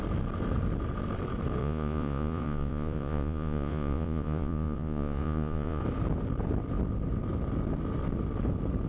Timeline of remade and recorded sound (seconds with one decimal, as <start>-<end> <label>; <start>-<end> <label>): 0.0-1.6 recorded; 1.6-5.8 remade; 5.8-8.9 recorded